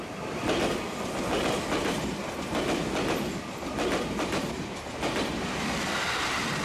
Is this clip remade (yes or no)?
no